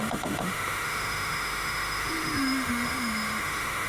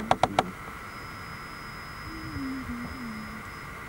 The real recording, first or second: second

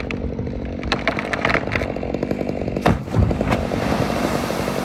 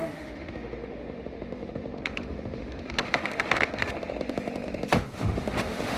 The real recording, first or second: first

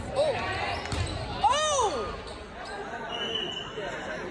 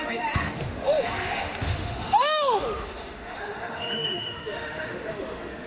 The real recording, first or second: first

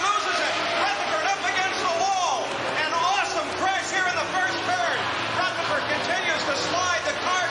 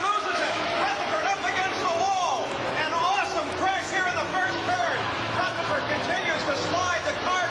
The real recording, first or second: first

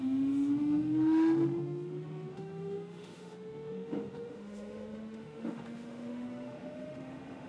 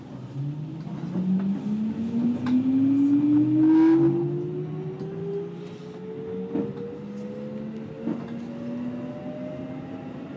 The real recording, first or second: second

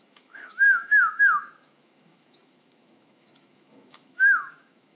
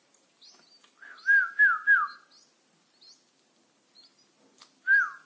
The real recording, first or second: second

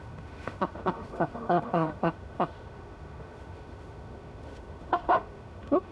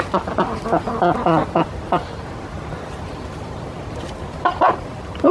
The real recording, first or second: second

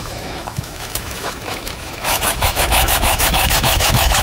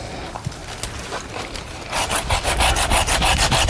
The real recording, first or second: second